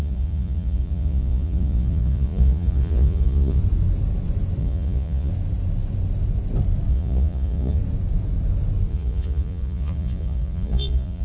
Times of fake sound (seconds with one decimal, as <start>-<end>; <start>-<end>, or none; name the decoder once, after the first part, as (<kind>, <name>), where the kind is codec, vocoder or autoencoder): 0.0-3.6 (vocoder, Vocos); 4.6-5.3; 6.9-7.8; 8.9-11.2